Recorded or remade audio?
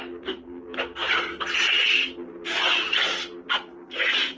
recorded